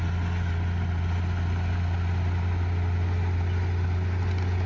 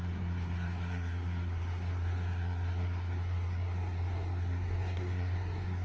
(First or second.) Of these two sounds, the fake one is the second